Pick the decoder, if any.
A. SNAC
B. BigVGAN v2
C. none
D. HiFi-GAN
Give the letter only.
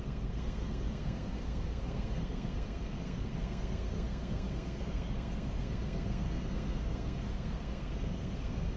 A